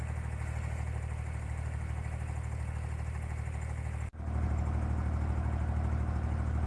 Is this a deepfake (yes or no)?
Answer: no